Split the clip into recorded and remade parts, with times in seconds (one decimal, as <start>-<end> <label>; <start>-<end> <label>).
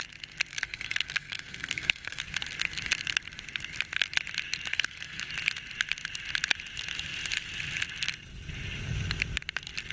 0.0-0.5 recorded; 0.5-2.2 remade; 2.2-4.7 recorded; 4.7-5.3 remade; 5.3-9.9 recorded